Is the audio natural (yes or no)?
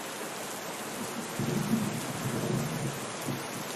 yes